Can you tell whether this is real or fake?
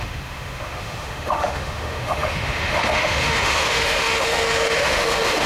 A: fake